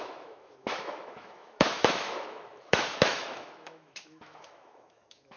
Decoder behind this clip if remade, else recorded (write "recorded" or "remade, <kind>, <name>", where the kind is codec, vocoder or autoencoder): remade, autoencoder, DAC-VAE